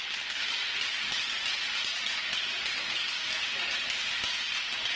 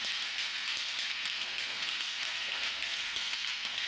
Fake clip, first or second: second